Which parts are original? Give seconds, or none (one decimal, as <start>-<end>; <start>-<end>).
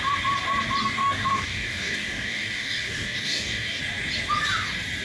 0.0-0.8; 3.8-5.0